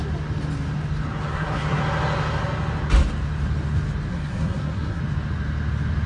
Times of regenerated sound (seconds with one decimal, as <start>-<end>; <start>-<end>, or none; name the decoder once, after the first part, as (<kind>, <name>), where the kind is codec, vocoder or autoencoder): 1.3-1.8 (codec, SNAC); 4.1-5.0